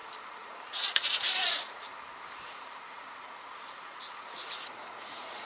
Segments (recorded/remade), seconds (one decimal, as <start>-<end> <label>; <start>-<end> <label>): 0.0-0.5 recorded; 0.5-1.9 remade; 1.9-2.4 recorded; 2.4-5.5 remade